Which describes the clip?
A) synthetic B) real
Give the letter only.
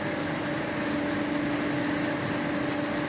B